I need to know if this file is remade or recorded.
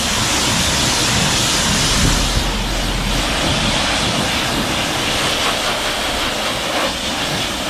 recorded